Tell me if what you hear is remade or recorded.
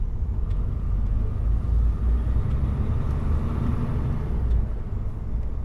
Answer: recorded